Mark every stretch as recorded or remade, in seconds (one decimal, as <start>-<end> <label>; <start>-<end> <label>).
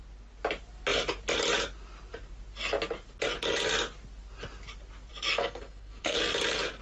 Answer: 0.0-5.1 recorded; 5.1-6.2 remade; 6.2-6.8 recorded